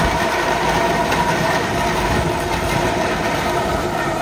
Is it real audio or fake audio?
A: real